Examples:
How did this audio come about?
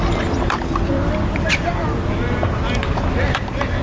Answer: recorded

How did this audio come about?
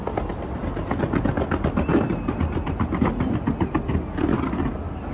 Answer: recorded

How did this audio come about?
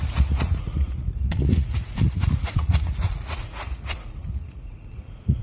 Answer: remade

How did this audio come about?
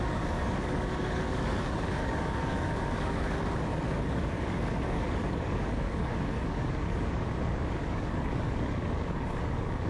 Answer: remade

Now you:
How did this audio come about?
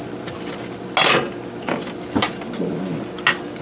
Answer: recorded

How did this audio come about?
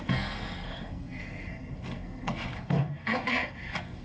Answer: remade